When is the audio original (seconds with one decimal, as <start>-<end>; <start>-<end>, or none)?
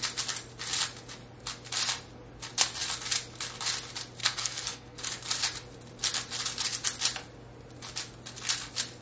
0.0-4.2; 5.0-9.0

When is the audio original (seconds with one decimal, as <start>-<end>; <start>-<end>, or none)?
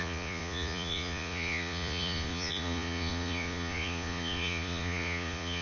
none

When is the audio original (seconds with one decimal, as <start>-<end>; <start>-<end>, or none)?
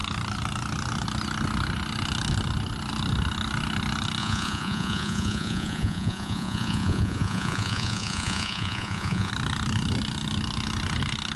0.0-4.2; 9.3-11.4